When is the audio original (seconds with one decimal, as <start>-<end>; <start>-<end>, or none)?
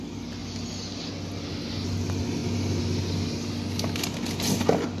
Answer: 0.0-5.0